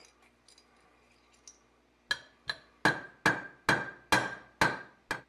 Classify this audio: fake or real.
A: real